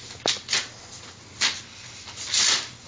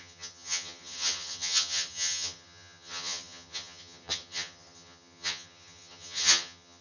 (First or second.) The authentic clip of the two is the first